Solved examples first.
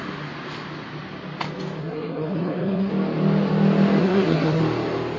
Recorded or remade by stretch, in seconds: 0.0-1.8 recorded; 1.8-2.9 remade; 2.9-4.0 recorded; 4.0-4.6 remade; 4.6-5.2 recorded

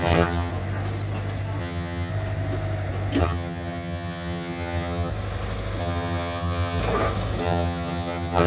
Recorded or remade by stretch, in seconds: 0.0-0.5 remade; 0.5-1.6 recorded; 1.6-2.1 remade; 2.1-3.2 recorded; 3.2-5.1 remade; 5.1-5.8 recorded; 5.8-6.8 remade; 6.8-7.4 recorded; 7.4-8.5 remade

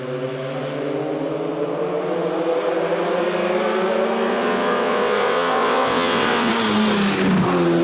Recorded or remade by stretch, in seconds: 0.0-4.3 recorded; 4.3-6.5 remade; 6.5-7.8 recorded